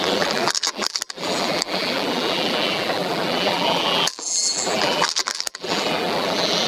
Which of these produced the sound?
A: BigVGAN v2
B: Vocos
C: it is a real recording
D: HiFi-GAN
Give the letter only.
A